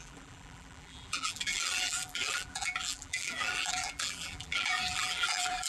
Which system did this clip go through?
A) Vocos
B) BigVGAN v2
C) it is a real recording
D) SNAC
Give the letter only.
B